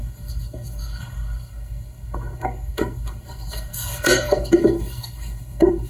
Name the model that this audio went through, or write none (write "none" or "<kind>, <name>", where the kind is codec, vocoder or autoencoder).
codec, SNAC